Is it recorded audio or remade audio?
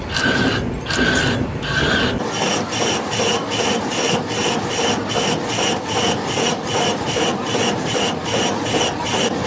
recorded